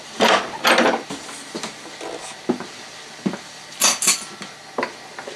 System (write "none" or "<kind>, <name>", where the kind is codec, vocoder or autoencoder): none